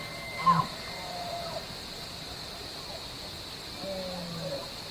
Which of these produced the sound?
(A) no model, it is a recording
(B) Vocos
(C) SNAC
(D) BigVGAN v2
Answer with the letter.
A